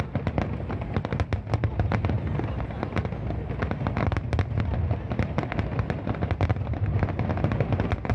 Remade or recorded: recorded